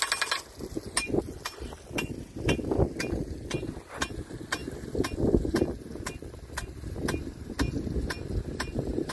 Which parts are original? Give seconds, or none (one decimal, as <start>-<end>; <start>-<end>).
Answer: 0.0-9.1